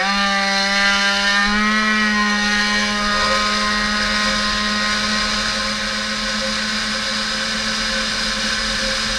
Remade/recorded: recorded